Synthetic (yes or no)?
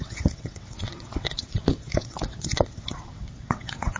yes